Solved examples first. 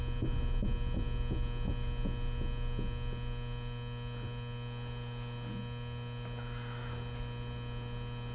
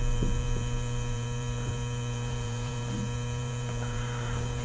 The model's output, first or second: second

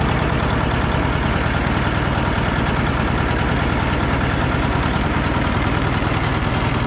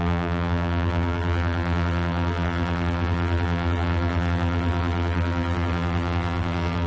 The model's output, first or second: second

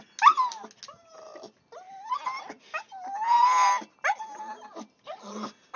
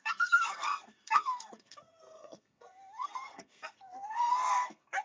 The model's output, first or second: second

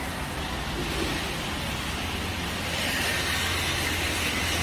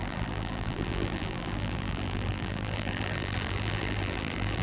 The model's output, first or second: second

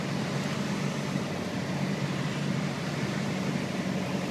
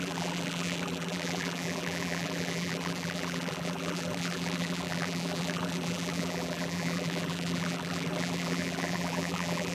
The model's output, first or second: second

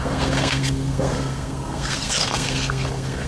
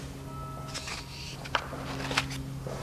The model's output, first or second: first